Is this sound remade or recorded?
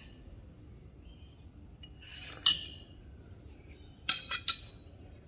recorded